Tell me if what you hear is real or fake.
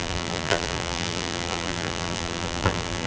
fake